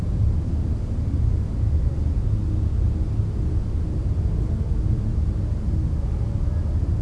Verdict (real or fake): real